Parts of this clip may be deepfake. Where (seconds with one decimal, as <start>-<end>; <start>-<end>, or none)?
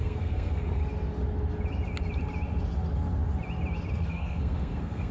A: 0.0-0.8; 3.9-5.1